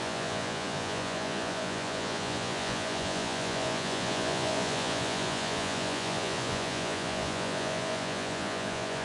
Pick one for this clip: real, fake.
fake